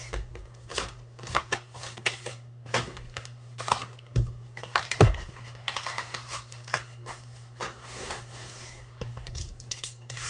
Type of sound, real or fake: fake